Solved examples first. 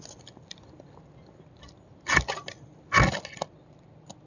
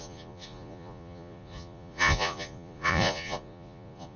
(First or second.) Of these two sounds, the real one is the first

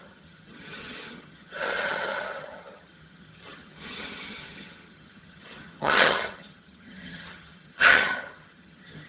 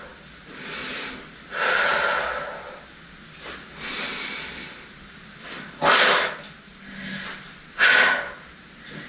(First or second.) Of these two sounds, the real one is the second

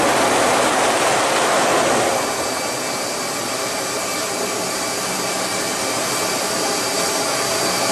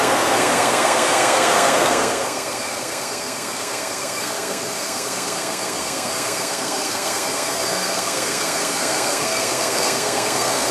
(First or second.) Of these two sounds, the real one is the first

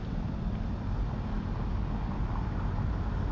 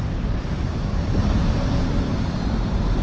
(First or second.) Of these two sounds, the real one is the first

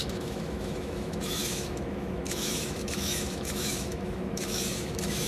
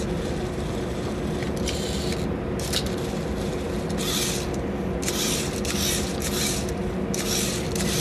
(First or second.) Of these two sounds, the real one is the second